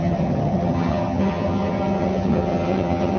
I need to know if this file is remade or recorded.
remade